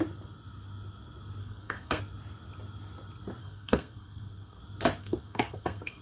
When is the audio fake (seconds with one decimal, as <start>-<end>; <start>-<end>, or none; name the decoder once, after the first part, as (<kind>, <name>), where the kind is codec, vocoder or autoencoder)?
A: 1.4-2.0 (codec, SNAC); 3.4-4.6; 5.0-6.0